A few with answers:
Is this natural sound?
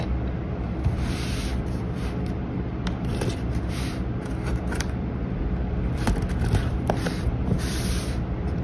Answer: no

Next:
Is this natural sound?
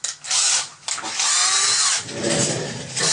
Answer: yes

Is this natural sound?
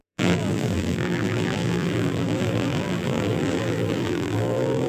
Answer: no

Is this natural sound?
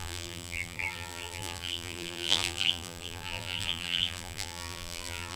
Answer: no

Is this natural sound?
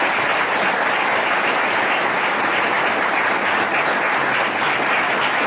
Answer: yes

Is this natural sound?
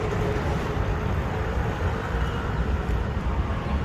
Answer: no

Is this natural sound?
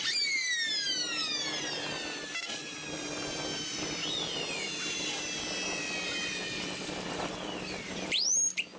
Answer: no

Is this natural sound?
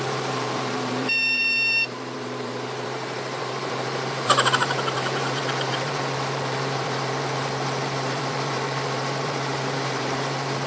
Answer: no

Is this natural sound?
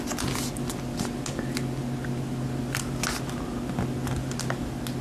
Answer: yes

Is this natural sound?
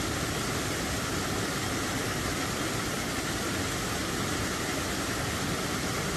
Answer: yes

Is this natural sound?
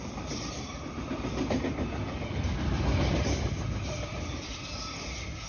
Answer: yes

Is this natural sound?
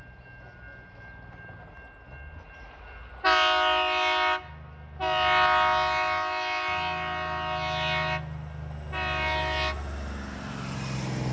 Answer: yes